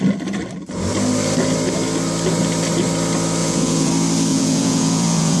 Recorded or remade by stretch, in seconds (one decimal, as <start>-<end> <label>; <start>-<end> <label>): 0.0-3.4 recorded; 3.4-3.9 remade; 3.9-4.3 recorded; 4.3-5.4 remade